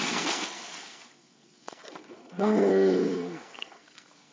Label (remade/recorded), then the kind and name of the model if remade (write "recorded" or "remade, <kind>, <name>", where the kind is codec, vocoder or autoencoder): remade, codec, SNAC